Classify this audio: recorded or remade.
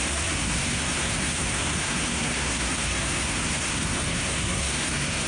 remade